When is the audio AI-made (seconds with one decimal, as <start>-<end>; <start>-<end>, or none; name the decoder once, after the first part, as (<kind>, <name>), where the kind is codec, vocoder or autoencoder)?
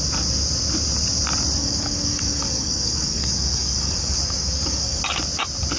1.6-5.0 (codec, DAC)